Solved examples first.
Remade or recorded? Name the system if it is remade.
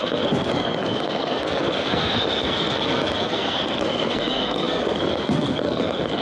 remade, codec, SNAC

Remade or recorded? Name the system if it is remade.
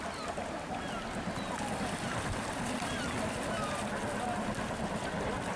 recorded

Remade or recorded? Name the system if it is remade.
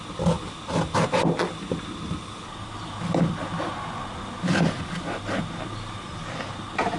recorded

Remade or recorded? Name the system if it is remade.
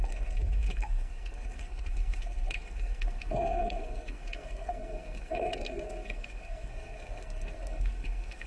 remade, codec, SNAC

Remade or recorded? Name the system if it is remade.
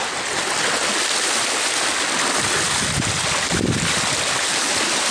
recorded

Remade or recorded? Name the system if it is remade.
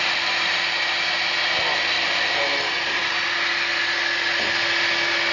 recorded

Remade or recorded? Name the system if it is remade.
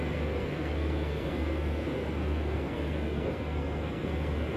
remade, codec, SNAC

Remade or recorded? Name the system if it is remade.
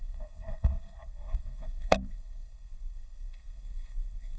remade, codec, SNAC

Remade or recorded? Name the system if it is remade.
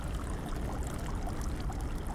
recorded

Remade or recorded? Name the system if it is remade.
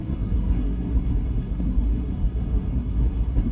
remade, codec, SNAC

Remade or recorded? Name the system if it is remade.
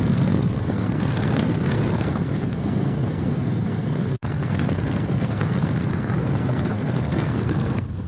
remade, codec, SNAC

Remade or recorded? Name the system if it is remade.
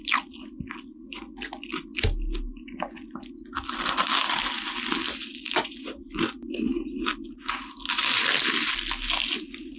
recorded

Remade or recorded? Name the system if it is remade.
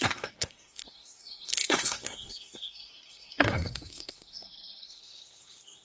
remade, codec, SNAC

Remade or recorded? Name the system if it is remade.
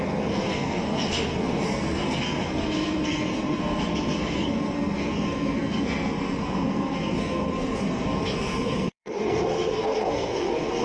remade, codec, SNAC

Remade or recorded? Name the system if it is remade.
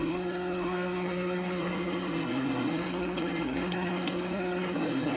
remade, codec, SNAC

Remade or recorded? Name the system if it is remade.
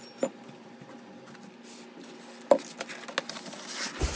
recorded